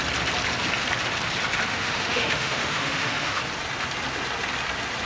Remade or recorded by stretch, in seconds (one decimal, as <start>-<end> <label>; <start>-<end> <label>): 0.0-1.7 recorded; 1.7-3.4 remade; 3.4-5.1 recorded